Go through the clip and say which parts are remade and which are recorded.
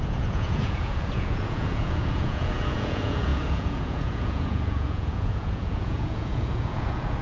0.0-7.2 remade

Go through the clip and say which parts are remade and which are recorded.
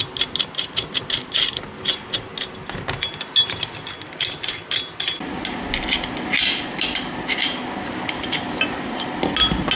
0.0-9.8 recorded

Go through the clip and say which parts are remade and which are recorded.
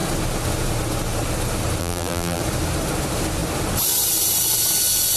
0.0-1.8 recorded; 1.8-2.4 remade; 2.4-5.2 recorded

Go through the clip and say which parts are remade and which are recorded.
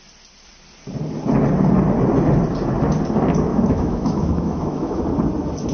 0.0-3.5 recorded; 3.5-5.0 remade; 5.0-5.7 recorded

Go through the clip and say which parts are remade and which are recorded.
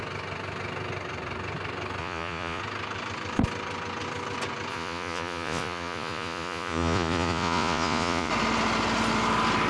0.0-2.0 recorded; 2.0-2.6 remade; 2.6-4.7 recorded; 4.7-8.3 remade; 8.3-9.7 recorded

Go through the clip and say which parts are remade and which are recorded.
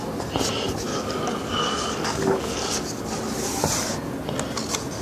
0.0-0.9 recorded; 0.9-3.1 remade; 3.1-5.0 recorded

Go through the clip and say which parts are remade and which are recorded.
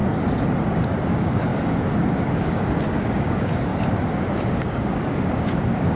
0.0-0.6 recorded; 0.6-6.0 remade